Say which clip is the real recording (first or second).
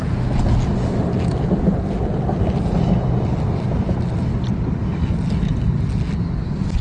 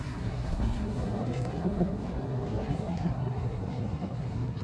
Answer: first